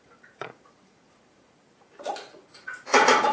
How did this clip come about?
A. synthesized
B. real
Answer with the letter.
A